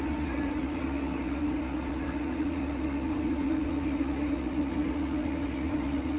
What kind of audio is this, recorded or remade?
remade